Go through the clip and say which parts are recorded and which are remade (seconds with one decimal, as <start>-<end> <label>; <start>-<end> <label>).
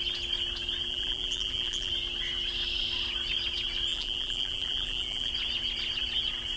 0.0-0.9 recorded; 0.9-1.9 remade; 1.9-3.9 recorded; 3.9-5.3 remade; 5.3-6.6 recorded